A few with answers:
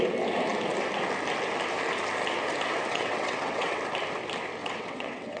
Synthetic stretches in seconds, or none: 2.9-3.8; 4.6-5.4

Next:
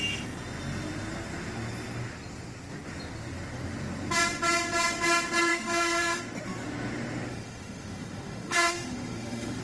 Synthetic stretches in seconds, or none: 5.5-6.2; 7.3-9.6

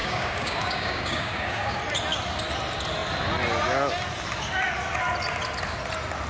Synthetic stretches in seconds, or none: 0.0-1.8

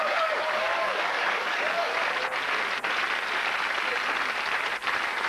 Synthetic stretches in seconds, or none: 0.0-1.9